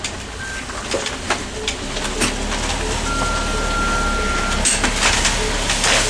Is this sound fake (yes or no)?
no